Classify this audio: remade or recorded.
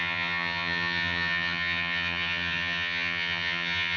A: remade